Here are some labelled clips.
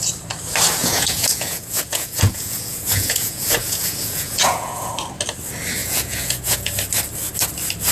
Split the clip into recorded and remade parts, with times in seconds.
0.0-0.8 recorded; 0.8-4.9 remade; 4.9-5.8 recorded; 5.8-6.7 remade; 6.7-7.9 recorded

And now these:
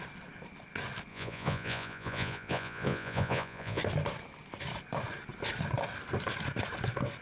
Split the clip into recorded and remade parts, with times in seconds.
0.0-1.1 recorded; 1.1-3.8 remade; 3.8-7.2 recorded

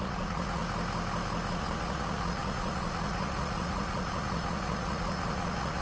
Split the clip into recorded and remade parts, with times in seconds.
0.0-0.6 remade; 0.6-1.5 recorded; 1.5-5.8 remade

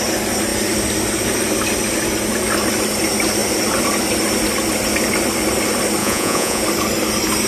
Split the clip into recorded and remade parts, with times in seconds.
0.0-6.0 recorded; 6.0-6.6 remade; 6.6-7.5 recorded

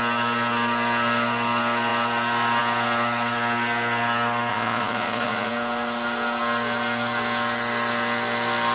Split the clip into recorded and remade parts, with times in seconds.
0.0-4.5 recorded; 4.5-5.5 remade; 5.5-8.7 recorded

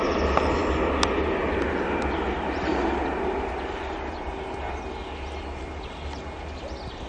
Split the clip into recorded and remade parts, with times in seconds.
0.0-7.1 recorded

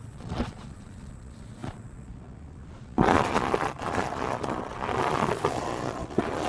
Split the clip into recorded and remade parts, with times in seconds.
0.0-6.5 remade